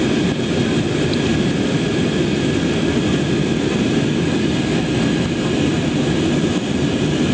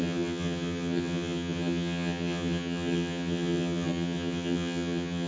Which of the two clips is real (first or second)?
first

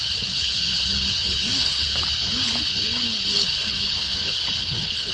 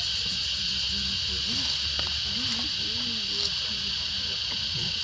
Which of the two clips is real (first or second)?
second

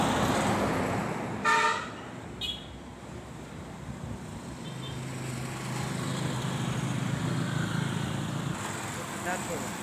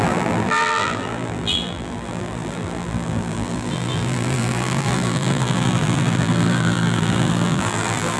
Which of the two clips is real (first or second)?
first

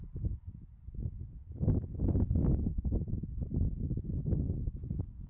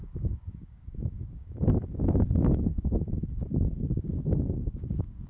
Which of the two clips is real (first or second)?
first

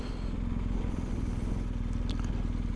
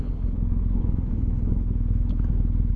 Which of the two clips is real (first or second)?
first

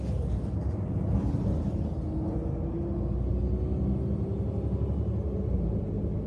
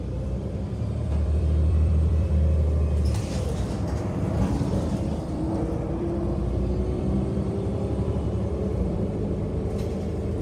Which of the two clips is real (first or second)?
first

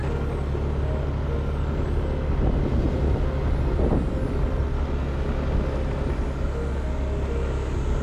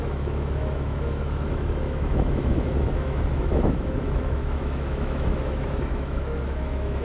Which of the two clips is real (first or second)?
first